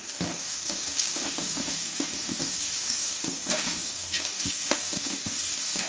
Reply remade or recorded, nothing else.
remade